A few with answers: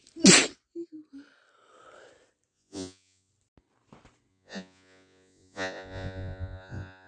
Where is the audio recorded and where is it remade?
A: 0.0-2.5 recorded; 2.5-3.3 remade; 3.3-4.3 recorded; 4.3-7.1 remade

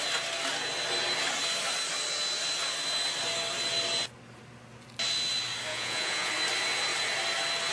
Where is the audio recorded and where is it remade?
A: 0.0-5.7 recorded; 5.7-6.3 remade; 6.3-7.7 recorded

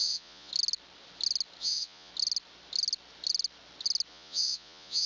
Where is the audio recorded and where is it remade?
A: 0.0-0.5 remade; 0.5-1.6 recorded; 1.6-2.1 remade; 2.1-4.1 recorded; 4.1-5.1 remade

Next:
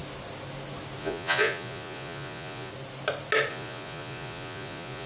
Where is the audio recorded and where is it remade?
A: 0.0-1.0 recorded; 1.0-2.7 remade; 2.7-3.5 recorded; 3.5-5.1 remade

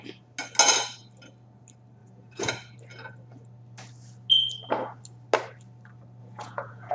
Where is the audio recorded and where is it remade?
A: 0.0-2.0 recorded; 2.0-2.5 remade; 2.5-6.2 recorded; 6.2-6.9 remade

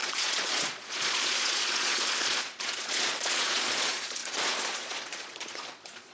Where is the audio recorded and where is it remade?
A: 0.0-6.1 remade

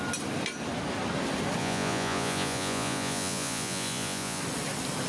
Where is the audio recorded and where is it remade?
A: 0.0-1.6 recorded; 1.6-4.4 remade; 4.4-5.1 recorded